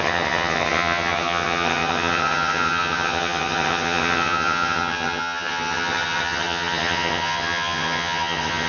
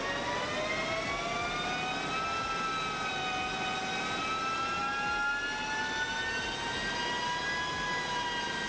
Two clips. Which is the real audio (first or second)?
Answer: second